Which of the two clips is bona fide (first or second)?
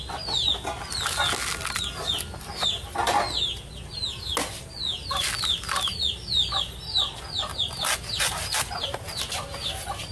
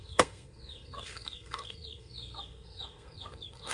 first